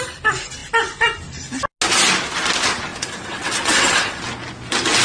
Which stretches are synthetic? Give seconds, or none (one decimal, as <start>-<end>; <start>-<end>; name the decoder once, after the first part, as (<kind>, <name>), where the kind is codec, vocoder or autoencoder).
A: 2.9-4.2 (vocoder, WaveNeXt)